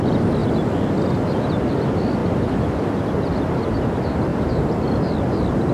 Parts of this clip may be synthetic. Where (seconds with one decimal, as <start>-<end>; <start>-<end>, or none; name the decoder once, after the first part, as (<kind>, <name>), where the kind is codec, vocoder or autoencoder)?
4.3-5.0 (vocoder, BigVGAN v2)